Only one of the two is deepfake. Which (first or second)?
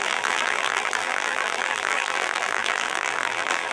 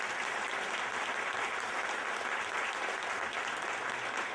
first